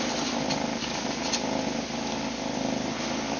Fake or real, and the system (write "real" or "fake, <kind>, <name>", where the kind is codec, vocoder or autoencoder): real